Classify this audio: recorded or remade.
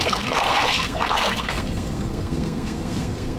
remade